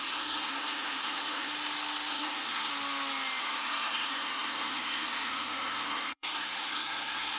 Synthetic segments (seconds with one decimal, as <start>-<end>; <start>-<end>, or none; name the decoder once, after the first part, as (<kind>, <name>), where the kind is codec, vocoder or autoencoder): 0.0-1.5 (codec, SNAC); 2.1-2.7; 3.4-7.4